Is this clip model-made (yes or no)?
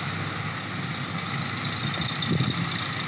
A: no